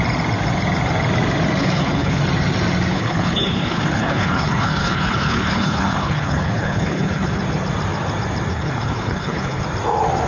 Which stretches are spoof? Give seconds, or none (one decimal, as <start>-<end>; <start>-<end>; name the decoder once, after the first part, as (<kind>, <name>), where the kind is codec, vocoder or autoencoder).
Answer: 1.6-2.2 (codec, HILCodec); 2.9-7.4; 8.5-9.6